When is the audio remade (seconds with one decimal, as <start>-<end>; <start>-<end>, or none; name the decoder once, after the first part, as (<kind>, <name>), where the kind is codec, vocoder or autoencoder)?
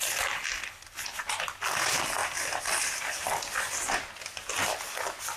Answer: none